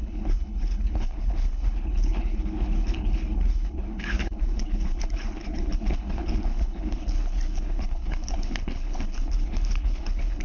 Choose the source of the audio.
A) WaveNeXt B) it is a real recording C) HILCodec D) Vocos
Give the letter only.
C